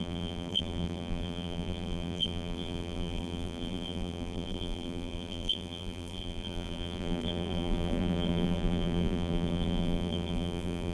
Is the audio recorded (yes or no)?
no